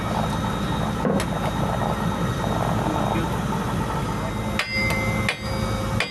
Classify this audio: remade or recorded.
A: recorded